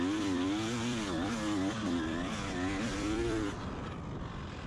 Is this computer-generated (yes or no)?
yes